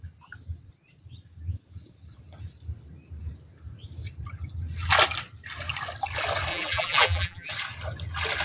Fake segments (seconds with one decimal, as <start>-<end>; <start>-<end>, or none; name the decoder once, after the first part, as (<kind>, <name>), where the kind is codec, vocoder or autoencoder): 6.5-7.5 (vocoder, BigVGAN v2)